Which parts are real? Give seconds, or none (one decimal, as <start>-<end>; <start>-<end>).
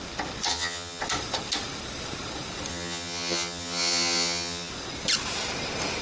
0.0-0.5; 1.0-2.7; 4.7-6.0